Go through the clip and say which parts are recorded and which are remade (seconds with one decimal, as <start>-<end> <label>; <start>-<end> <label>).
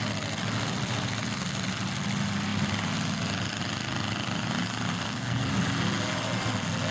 0.0-4.9 recorded; 4.9-5.5 remade; 5.5-6.9 recorded